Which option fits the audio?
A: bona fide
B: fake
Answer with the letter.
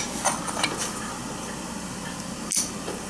A